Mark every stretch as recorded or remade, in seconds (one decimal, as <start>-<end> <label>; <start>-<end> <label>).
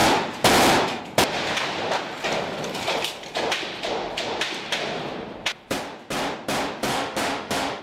0.0-6.9 recorded; 6.9-7.8 remade